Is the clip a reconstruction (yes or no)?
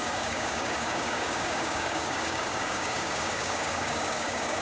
yes